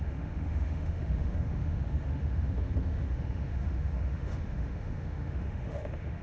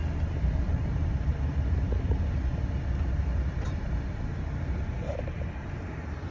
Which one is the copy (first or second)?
first